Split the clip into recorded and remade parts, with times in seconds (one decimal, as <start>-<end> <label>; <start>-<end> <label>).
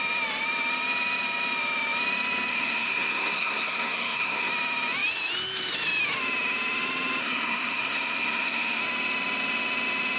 0.0-2.5 recorded; 2.5-4.5 remade; 4.5-7.2 recorded; 7.2-8.8 remade; 8.8-10.2 recorded